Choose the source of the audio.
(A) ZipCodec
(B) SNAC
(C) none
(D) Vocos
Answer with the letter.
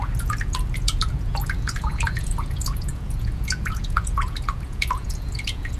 D